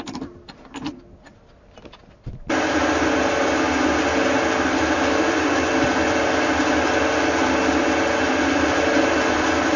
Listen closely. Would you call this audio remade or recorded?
recorded